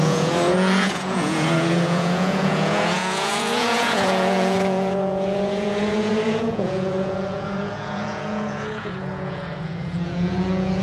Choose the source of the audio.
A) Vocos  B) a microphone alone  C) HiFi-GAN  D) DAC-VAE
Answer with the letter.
A